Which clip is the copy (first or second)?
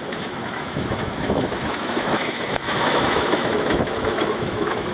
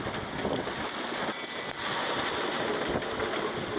first